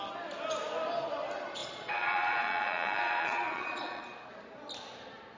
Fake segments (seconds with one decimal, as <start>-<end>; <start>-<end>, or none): 1.6-4.0